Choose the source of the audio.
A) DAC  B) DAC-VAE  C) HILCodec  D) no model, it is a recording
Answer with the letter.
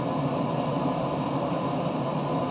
D